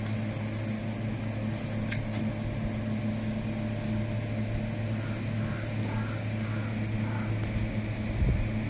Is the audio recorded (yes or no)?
yes